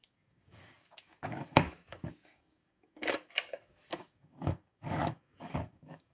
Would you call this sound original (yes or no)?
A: no